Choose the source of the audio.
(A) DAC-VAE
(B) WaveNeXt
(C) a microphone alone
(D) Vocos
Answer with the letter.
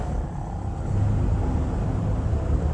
C